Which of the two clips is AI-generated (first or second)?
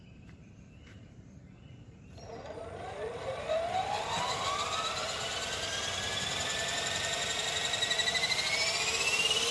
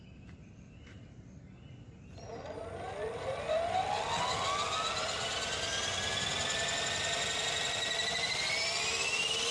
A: first